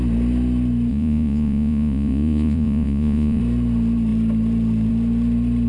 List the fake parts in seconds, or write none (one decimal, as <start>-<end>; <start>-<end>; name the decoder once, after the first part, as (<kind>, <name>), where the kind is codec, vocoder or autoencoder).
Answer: 0.9-3.4 (vocoder, Vocos)